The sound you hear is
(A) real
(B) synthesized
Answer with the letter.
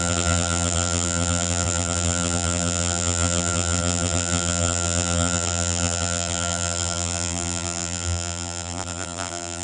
B